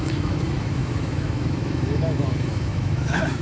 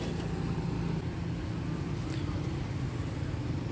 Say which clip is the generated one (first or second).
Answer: first